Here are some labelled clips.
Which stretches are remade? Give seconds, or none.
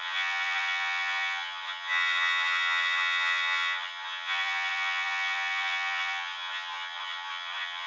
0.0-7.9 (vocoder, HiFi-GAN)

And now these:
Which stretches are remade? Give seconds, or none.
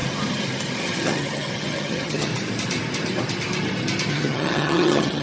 0.8-2.3 (vocoder, HiFi-GAN); 4.1-5.2